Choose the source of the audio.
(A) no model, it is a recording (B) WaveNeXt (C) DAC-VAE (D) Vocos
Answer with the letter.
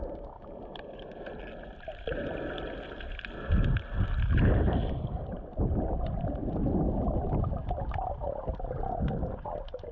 A